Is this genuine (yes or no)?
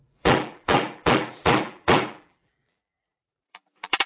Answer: no